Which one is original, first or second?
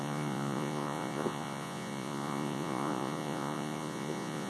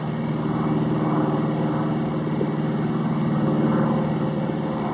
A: second